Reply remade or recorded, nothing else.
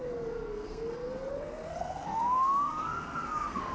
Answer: remade